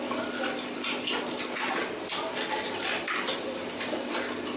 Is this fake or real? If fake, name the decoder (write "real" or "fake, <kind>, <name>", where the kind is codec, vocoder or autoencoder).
real